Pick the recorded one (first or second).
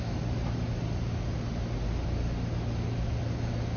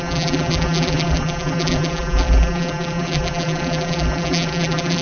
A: first